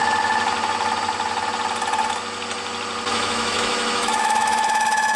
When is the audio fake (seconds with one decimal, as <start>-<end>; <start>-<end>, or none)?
3.1-5.2